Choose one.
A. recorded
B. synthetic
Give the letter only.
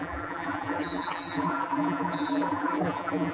B